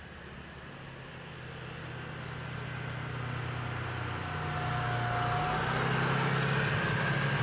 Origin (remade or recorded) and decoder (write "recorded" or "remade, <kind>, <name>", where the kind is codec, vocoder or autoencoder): recorded